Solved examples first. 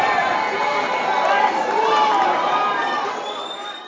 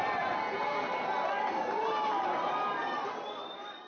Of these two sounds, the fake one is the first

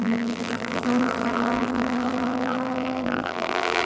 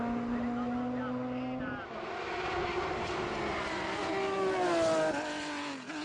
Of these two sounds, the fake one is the first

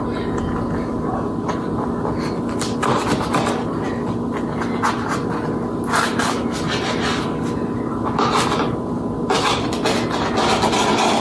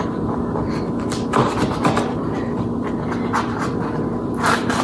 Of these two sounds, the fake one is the second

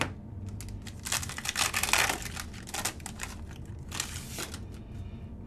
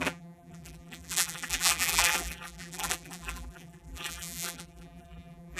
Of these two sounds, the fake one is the second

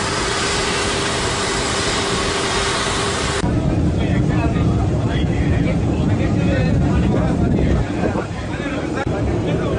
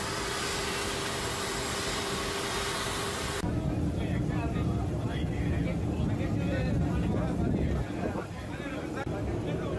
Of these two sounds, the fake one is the first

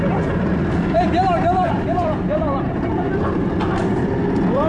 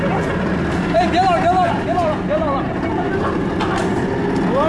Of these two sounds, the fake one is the first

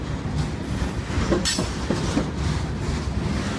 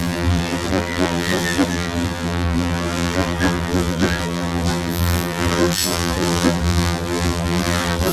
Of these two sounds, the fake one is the second